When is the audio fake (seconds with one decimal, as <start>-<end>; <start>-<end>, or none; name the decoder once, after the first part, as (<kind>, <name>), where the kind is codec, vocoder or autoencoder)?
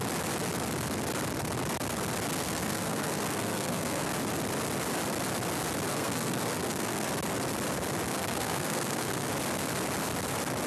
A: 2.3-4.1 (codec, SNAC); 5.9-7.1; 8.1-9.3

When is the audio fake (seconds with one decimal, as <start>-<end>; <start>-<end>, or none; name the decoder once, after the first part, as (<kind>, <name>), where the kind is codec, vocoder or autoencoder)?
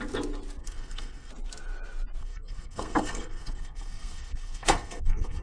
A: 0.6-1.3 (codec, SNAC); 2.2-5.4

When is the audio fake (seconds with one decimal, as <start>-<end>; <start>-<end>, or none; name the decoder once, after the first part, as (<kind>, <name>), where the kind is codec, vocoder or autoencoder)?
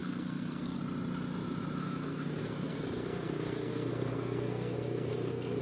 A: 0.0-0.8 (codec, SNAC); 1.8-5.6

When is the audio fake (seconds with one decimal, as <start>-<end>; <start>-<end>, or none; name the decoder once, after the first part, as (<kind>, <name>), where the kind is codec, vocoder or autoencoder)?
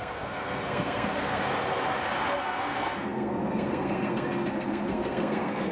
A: 0.0-1.4 (codec, SNAC); 2.4-5.7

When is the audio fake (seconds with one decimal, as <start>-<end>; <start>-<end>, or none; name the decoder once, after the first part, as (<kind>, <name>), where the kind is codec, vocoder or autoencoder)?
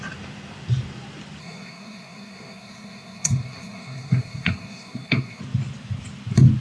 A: 1.4-5.4 (codec, SNAC)